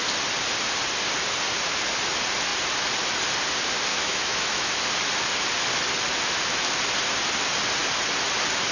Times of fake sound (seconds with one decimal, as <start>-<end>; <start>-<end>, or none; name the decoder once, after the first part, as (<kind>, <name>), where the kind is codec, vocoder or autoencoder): 3.9-4.9 (autoencoder, DAC-VAE)